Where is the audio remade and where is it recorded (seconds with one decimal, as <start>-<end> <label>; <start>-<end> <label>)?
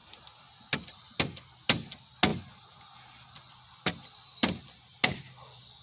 0.0-5.8 recorded